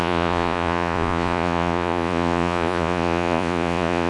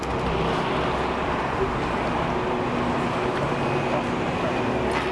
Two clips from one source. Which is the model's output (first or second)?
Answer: first